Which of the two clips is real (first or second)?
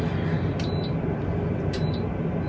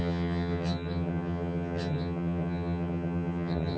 first